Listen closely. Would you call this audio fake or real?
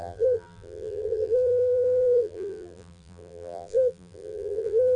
fake